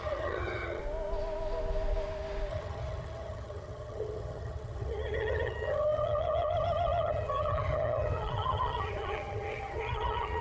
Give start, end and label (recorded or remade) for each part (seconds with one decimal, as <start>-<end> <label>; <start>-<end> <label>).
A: 0.0-0.8 remade; 0.8-2.5 recorded; 2.5-10.4 remade